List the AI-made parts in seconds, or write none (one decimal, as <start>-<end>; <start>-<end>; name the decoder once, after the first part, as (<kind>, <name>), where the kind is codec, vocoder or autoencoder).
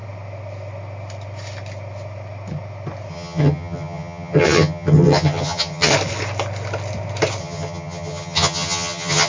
3.1-5.9 (vocoder, HiFi-GAN); 7.4-9.3